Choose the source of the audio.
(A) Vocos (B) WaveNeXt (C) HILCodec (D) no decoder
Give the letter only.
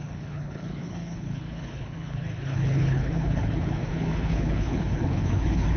C